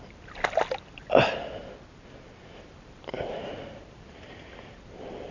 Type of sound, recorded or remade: recorded